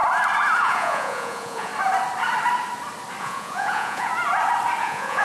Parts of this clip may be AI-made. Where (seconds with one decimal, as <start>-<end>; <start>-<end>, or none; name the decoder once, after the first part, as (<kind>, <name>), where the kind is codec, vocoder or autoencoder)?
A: 0.6-1.7 (vocoder, Vocos); 3.2-4.1; 4.8-5.2